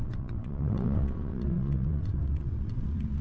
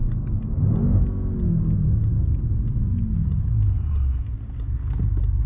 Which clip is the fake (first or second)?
first